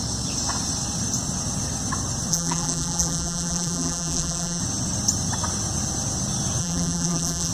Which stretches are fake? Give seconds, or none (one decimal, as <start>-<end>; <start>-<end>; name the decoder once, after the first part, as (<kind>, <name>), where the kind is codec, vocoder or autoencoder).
2.3-4.6 (vocoder, BigVGAN v2); 6.6-7.5